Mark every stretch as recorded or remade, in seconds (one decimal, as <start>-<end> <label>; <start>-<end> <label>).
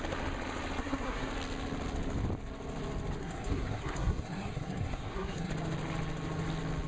0.0-0.8 recorded; 0.8-1.3 remade; 1.3-3.2 recorded; 3.2-5.5 remade; 5.5-6.9 recorded